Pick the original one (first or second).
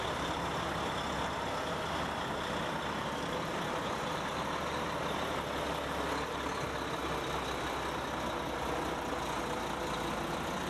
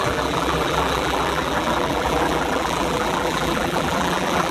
first